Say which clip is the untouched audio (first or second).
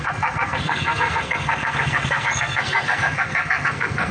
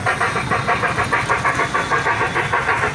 second